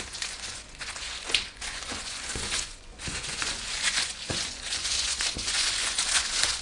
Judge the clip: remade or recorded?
remade